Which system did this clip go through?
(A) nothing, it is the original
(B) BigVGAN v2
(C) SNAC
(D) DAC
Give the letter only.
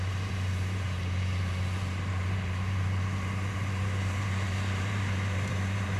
B